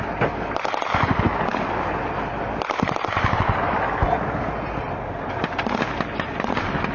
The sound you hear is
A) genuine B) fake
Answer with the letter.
A